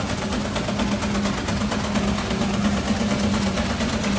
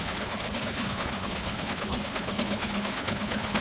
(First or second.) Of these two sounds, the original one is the first